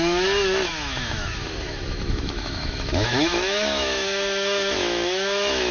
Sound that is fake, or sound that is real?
fake